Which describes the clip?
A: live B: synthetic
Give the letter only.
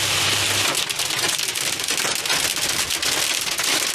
A